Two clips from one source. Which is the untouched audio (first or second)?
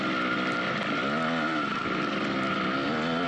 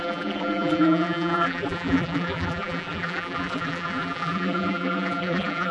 first